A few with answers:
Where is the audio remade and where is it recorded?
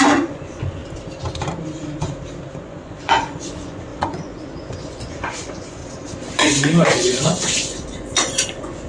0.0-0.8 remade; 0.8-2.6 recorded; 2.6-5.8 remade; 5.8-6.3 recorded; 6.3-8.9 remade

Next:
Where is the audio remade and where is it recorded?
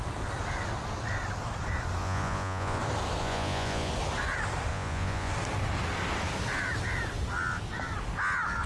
0.0-2.0 recorded; 2.0-2.8 remade; 2.8-3.2 recorded; 3.2-3.9 remade; 3.9-4.7 recorded; 4.7-5.3 remade; 5.3-8.7 recorded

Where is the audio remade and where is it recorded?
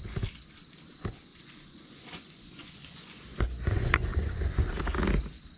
0.0-1.3 recorded; 1.3-4.7 remade; 4.7-5.6 recorded